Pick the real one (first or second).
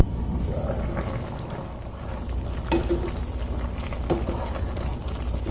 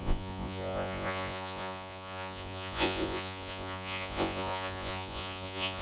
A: first